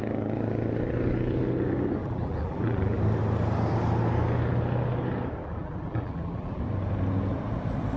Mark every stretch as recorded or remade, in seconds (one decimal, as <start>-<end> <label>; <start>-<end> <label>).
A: 0.0-2.0 recorded; 2.0-3.0 remade; 3.0-5.4 recorded; 5.4-6.6 remade; 6.6-8.0 recorded